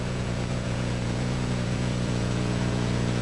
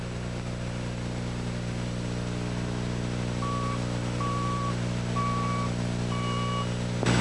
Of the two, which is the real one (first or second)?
second